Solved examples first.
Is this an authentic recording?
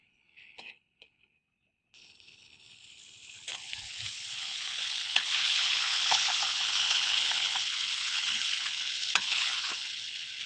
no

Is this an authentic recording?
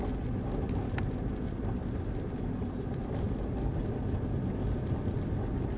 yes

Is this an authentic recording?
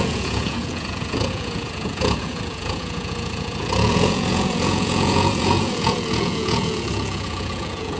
no